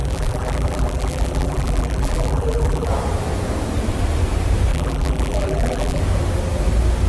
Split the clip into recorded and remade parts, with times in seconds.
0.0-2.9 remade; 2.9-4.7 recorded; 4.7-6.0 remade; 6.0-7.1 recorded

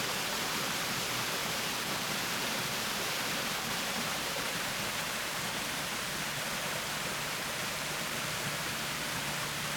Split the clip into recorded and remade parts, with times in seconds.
0.0-1.4 recorded; 1.4-5.4 remade; 5.4-7.6 recorded; 7.6-8.7 remade; 8.7-9.8 recorded